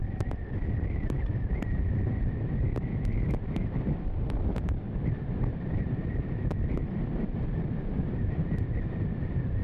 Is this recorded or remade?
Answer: remade